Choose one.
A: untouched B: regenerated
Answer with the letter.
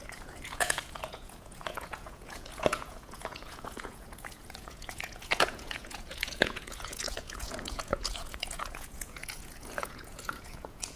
B